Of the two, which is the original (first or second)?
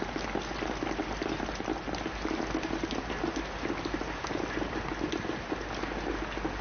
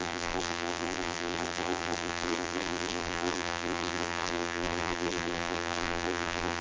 first